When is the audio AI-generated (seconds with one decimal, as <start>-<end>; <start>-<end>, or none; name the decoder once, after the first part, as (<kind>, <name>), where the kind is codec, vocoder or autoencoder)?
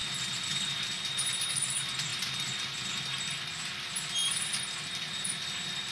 0.0-0.8 (vocoder, BigVGAN v2); 4.2-5.3